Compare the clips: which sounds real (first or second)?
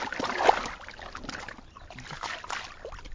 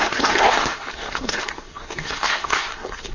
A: first